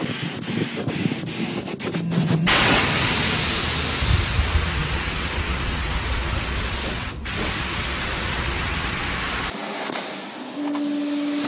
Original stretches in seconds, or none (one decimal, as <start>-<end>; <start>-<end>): 0.0-2.2; 2.8-4.8; 9.1-11.5